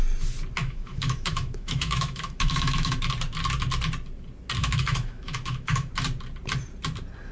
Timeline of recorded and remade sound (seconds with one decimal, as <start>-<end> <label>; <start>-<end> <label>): 0.0-0.6 recorded; 0.6-3.0 remade; 3.0-4.6 recorded; 4.6-5.9 remade; 5.9-7.3 recorded